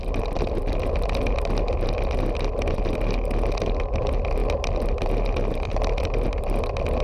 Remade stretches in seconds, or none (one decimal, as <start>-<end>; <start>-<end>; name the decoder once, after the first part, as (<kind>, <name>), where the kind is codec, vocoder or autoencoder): none